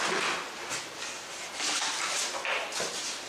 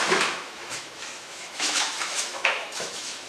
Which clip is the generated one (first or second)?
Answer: second